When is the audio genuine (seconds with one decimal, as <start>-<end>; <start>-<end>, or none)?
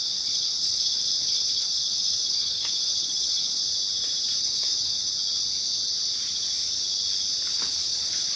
3.6-4.4; 5.1-7.5